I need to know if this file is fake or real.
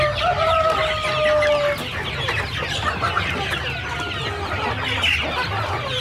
real